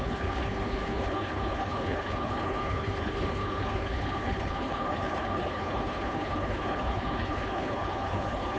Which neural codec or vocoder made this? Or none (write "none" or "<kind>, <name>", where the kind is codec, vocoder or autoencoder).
codec, HILCodec